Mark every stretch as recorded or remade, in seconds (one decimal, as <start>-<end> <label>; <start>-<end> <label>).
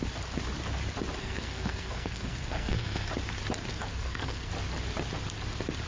0.0-1.2 recorded; 1.2-3.1 remade; 3.1-3.7 recorded; 3.7-4.5 remade; 4.5-5.9 recorded